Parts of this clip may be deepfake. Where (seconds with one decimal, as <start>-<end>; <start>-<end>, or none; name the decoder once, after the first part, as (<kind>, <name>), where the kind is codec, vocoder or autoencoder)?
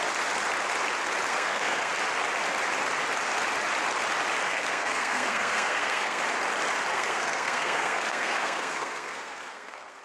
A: 1.3-1.9 (codec, SNAC); 4.5-6.2; 6.9-10.0